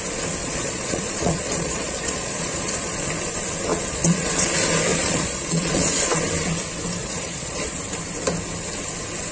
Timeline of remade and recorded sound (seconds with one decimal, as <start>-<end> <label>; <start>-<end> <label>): 0.0-0.4 recorded; 0.4-3.1 remade; 3.1-3.7 recorded; 3.7-4.5 remade; 4.5-4.9 recorded; 4.9-6.2 remade; 6.2-7.0 recorded; 7.0-7.8 remade; 7.8-9.3 recorded